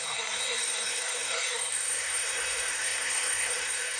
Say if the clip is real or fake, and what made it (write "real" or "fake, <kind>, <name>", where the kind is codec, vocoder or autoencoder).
fake, codec, SNAC